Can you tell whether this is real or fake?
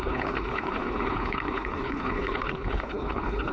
fake